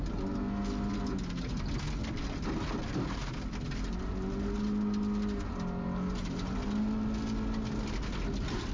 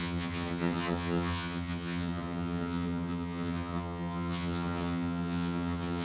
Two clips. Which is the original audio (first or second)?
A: first